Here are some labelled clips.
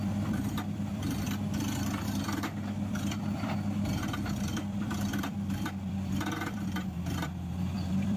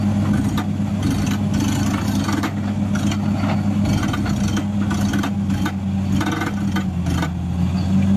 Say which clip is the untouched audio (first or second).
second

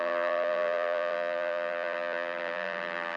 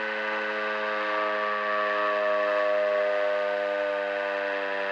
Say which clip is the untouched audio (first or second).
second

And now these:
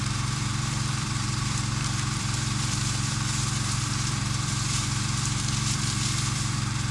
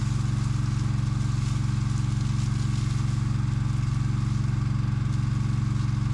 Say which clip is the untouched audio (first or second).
second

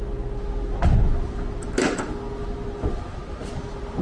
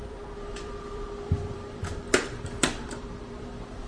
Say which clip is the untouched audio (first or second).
first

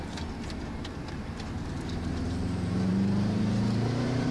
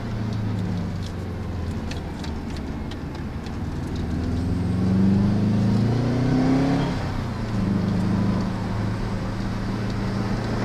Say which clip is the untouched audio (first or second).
second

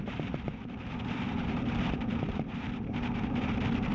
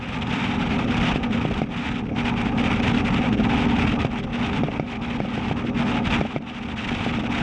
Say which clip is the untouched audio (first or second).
second